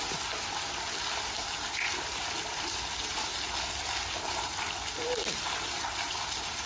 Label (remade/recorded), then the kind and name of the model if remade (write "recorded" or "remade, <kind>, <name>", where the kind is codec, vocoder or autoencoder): recorded